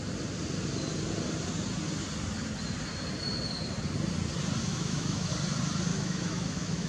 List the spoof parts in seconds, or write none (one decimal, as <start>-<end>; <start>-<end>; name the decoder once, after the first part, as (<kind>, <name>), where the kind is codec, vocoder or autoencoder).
4.7-5.3 (autoencoder, DAC-VAE); 5.9-6.9